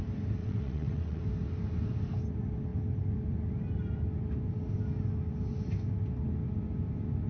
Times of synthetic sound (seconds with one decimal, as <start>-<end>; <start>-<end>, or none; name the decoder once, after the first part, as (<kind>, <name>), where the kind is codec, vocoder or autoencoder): 0.4-1.2 (vocoder, WaveNeXt)